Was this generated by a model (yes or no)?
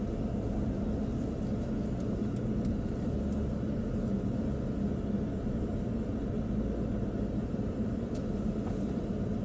no